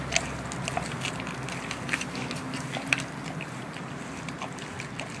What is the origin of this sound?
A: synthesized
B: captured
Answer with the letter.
B